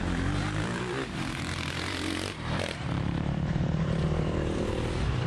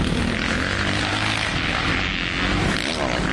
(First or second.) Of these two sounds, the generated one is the first